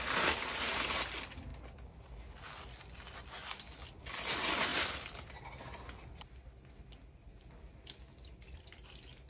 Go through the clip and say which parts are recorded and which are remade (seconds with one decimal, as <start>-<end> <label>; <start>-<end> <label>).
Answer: 0.0-9.3 recorded